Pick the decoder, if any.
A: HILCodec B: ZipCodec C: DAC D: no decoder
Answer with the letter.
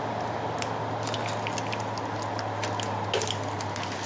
D